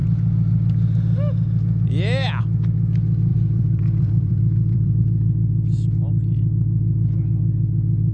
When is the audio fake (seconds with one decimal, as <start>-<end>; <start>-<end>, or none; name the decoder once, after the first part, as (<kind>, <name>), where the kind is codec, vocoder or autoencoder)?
3.3-5.0 (vocoder, BigVGAN v2)